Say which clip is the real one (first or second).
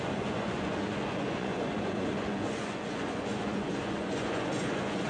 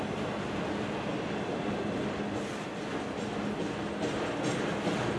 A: second